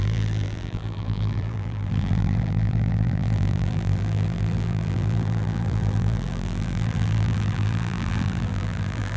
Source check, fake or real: fake